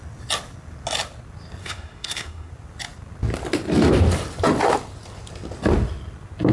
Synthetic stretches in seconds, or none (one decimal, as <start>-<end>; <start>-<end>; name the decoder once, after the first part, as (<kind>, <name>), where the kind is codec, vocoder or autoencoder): 1.6-2.5 (codec, SNAC)